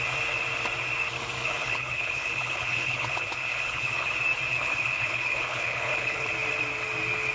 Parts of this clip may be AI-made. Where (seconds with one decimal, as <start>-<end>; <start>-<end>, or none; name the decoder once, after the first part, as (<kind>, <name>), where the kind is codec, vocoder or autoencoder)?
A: 1.6-4.1 (codec, HILCodec); 4.5-6.3